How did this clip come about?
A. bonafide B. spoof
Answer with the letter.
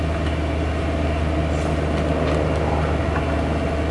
A